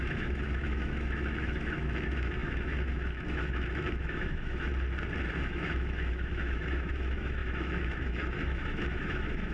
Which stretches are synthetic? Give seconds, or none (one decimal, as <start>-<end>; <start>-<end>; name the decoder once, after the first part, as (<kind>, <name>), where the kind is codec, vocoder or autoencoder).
0.0-4.7 (autoencoder, DAC-VAE); 5.3-9.5